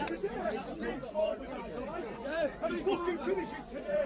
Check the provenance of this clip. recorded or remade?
remade